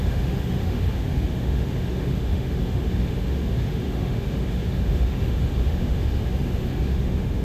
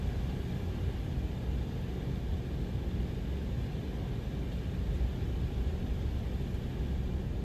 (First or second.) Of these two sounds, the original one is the second